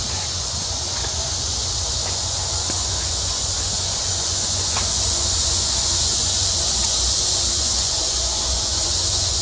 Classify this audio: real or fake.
fake